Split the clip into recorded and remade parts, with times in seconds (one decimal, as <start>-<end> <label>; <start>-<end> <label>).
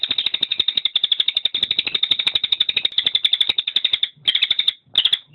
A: 0.0-5.3 recorded